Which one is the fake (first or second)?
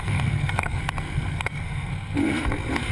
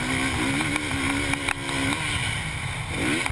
first